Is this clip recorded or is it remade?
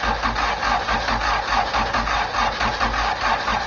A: recorded